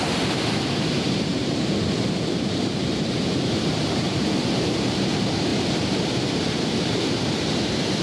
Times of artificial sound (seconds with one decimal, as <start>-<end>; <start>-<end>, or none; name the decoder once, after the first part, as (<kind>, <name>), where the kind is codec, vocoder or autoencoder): 0.0-5.5 (vocoder, BigVGAN v2); 6.4-8.0